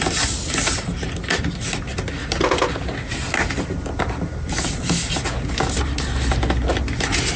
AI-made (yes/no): no